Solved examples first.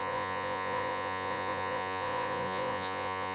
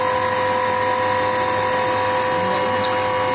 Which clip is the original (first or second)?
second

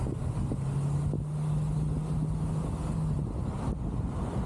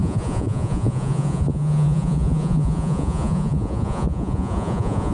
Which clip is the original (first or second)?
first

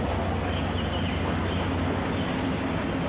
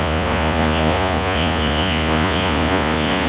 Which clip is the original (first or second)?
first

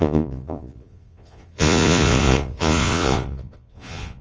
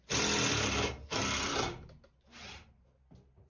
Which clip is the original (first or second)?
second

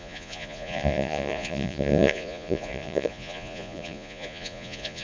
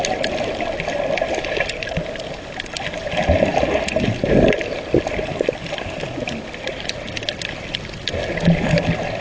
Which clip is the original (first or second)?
second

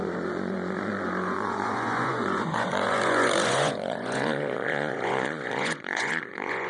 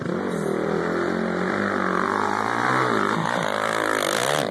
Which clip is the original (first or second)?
second